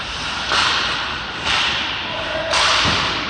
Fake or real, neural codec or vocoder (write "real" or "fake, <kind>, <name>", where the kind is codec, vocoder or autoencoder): fake, vocoder, BigVGAN v2